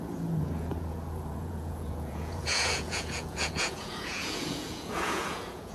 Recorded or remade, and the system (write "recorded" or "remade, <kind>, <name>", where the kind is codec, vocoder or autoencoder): remade, vocoder, Vocos